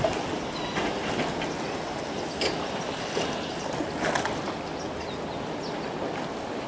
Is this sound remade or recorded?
recorded